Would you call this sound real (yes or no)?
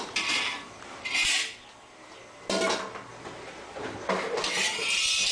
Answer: yes